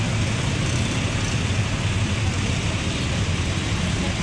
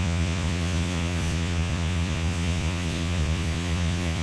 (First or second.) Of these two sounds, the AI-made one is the second